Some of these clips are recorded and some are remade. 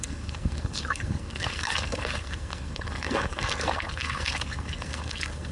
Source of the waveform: remade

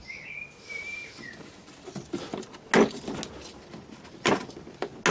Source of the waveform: recorded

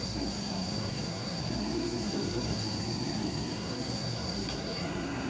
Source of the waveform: remade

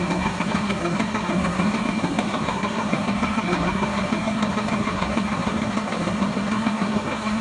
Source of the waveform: remade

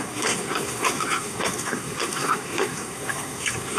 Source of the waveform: remade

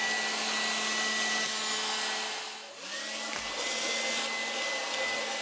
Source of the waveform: recorded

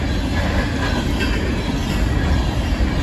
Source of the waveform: recorded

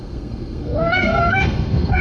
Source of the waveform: remade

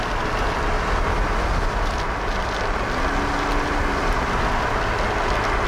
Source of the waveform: recorded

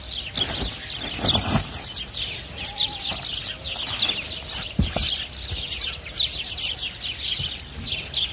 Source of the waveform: recorded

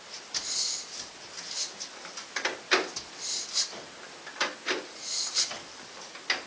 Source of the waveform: recorded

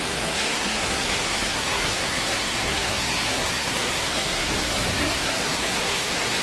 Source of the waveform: remade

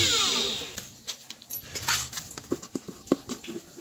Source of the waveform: recorded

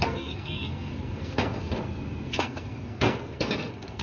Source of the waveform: remade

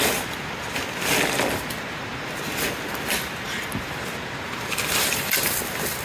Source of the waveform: recorded